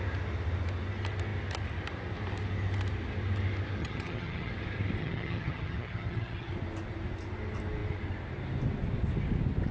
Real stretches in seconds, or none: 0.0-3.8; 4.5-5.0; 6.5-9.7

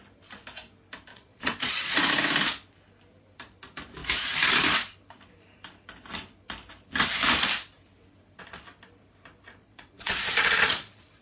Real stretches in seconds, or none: 0.0-1.1; 2.1-9.6